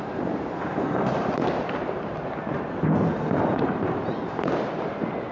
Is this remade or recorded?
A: remade